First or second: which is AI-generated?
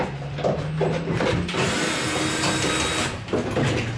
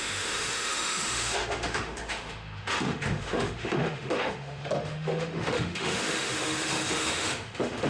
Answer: second